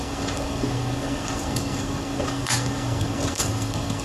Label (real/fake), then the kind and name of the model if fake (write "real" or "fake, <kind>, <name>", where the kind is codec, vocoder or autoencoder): fake, codec, SNAC